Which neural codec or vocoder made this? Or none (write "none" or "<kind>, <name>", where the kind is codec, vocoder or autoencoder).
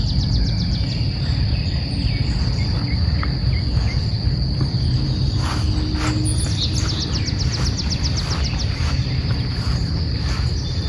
none